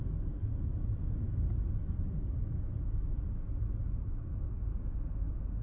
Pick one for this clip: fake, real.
real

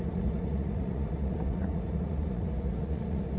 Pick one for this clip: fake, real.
fake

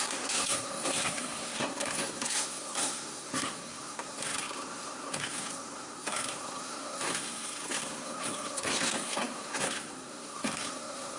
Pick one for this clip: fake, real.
fake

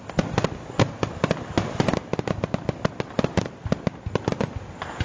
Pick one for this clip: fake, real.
real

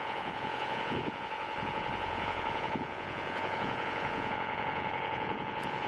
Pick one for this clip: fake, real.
fake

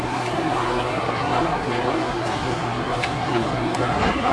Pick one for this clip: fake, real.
fake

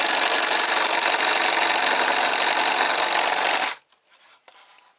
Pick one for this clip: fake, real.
real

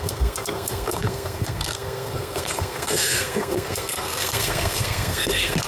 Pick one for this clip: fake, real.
fake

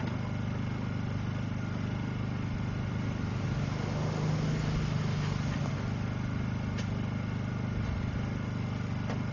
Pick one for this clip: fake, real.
real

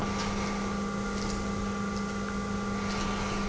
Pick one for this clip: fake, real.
real